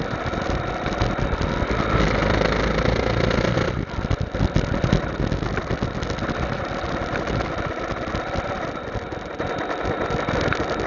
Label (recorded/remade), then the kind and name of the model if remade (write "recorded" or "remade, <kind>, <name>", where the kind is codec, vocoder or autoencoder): recorded